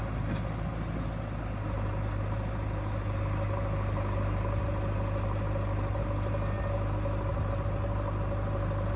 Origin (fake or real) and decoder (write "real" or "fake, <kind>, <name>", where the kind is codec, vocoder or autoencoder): real